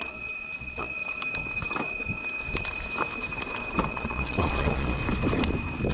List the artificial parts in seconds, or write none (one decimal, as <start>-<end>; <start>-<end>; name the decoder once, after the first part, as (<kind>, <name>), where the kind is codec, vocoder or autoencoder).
0.0-1.0 (vocoder, Vocos); 3.9-5.0